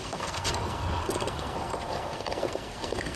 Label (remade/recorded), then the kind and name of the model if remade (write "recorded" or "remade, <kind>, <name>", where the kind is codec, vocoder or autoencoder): remade, codec, SNAC